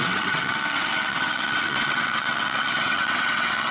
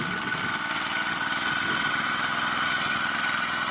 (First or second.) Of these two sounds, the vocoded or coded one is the first